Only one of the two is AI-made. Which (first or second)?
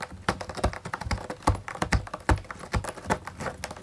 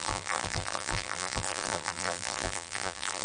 second